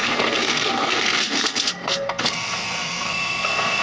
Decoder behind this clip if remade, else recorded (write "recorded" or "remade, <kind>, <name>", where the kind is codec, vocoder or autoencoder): remade, codec, SNAC